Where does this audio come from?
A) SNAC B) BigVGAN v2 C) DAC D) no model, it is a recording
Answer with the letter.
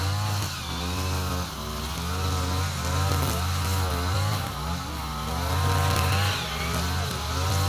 D